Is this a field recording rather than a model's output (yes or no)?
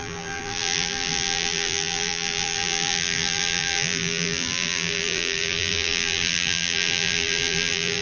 no